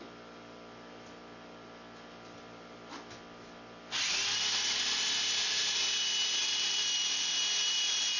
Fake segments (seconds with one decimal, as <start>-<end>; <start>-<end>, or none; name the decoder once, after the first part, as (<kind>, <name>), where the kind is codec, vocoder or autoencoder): 6.4-7.3 (vocoder, BigVGAN v2)